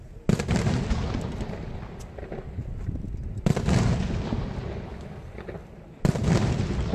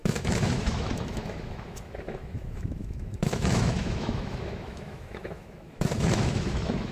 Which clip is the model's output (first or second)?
second